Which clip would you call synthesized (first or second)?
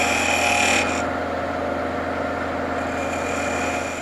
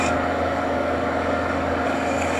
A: second